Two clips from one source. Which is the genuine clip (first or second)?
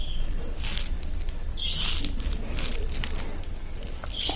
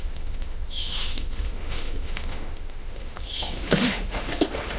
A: first